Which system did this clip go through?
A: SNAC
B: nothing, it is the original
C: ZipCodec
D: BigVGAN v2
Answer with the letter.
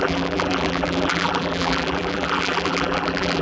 D